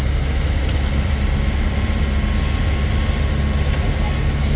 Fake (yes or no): no